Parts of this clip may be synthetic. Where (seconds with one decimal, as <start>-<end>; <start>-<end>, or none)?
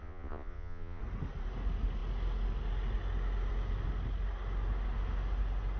0.0-1.0